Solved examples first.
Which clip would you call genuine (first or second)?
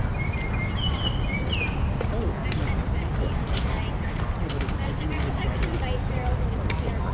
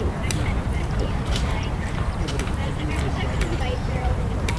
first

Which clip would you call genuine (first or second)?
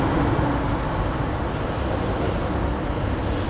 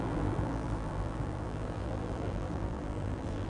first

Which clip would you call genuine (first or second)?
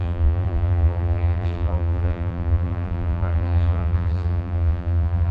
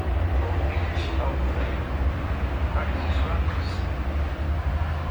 second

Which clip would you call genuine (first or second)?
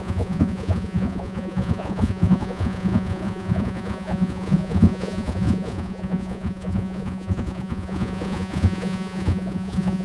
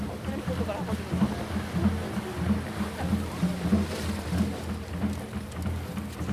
second